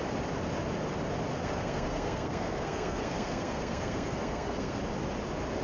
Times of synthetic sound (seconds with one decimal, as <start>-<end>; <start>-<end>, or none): 1.4-4.8